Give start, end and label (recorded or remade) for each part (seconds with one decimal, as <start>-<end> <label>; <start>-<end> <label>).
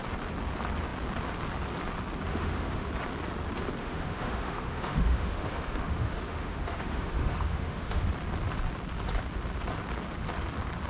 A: 0.0-2.3 recorded; 2.3-2.9 remade; 2.9-3.8 recorded; 3.8-8.1 remade; 8.1-10.9 recorded